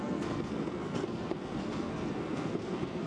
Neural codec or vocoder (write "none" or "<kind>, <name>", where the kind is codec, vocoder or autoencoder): codec, SNAC